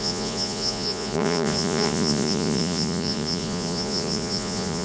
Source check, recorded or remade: remade